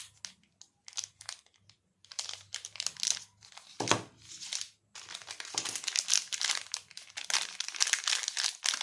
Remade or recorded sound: recorded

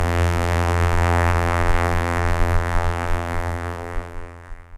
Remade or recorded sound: remade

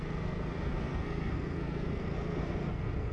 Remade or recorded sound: remade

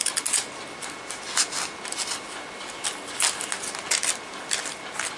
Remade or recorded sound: recorded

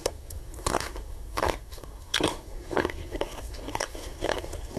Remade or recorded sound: remade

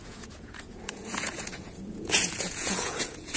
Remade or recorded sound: remade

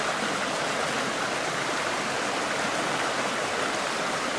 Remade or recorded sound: recorded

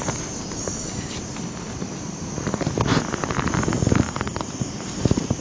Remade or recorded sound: remade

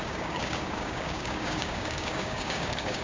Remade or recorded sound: remade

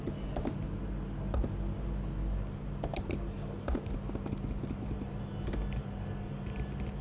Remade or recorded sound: recorded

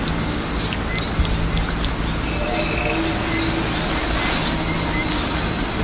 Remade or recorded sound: recorded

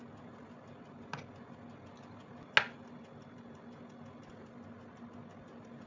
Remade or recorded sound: recorded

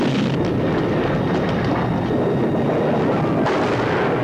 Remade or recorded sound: recorded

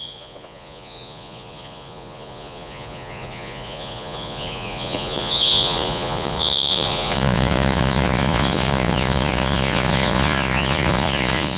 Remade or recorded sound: remade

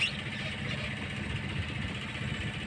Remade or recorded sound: recorded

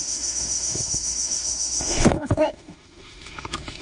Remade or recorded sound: remade